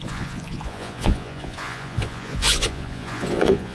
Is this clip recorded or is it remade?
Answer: remade